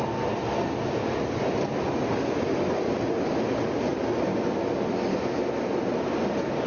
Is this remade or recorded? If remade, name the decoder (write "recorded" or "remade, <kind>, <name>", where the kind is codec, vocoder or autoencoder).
recorded